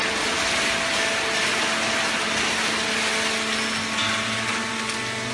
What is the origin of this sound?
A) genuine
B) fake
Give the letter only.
A